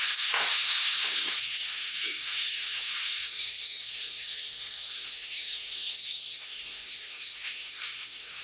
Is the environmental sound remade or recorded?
remade